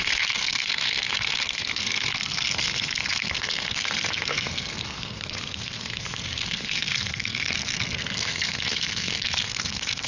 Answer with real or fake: fake